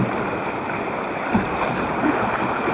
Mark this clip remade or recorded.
recorded